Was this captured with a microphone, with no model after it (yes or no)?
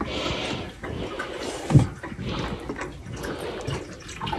yes